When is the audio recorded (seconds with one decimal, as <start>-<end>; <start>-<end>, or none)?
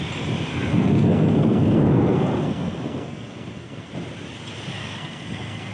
0.0-0.5; 3.9-4.8